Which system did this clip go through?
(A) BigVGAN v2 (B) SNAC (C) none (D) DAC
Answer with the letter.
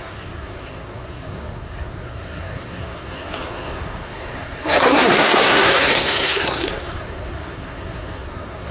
B